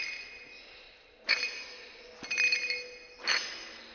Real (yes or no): yes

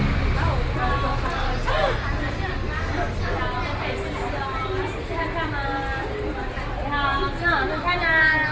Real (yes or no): yes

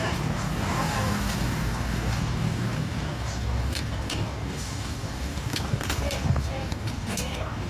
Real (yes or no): no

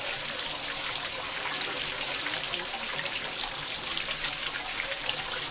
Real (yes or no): yes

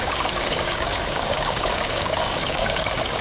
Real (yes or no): no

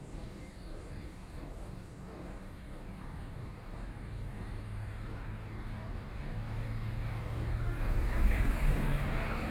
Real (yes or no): no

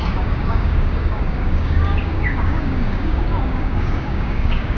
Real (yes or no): no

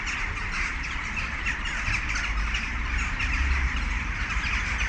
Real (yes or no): yes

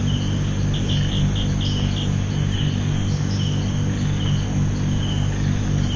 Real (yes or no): yes